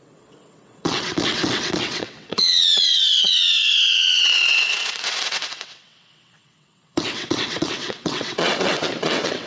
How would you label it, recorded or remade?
remade